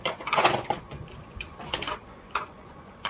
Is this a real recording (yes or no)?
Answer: no